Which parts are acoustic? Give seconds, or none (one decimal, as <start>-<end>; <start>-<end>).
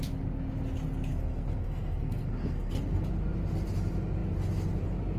0.0-1.1; 2.8-5.2